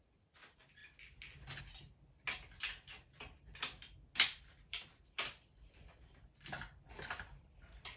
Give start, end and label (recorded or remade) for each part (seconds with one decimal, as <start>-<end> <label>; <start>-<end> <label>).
0.0-8.0 recorded